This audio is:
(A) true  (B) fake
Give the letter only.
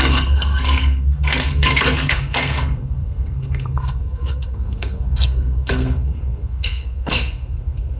B